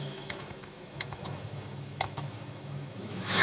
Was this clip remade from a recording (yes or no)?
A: yes